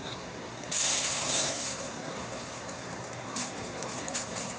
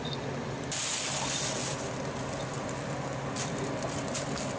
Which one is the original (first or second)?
second